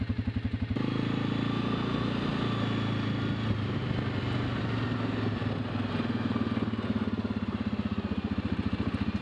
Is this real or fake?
real